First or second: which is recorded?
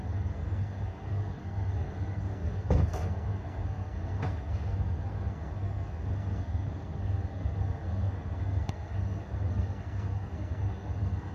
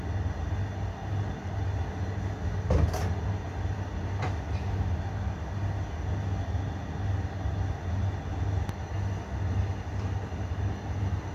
second